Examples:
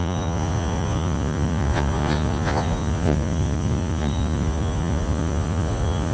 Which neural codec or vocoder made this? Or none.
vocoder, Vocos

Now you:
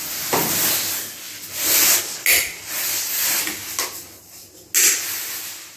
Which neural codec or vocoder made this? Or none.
none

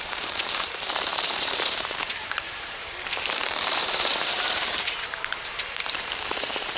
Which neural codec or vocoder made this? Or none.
vocoder, BigVGAN v2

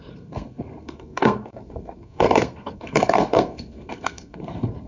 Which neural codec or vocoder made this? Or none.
codec, SNAC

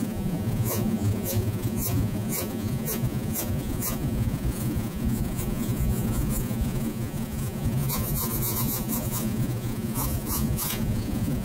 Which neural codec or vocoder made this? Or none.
vocoder, Vocos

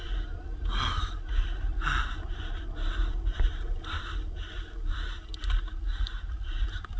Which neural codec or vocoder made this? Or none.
none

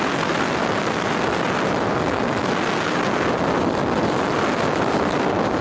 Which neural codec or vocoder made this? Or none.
none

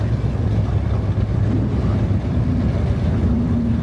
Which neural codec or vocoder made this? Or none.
none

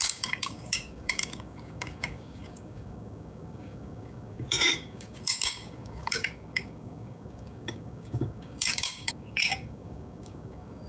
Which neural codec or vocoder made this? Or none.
codec, DAC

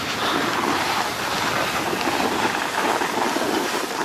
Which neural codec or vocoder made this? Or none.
none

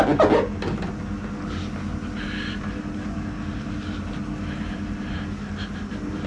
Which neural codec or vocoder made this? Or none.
none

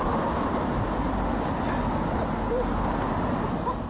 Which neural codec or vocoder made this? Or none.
none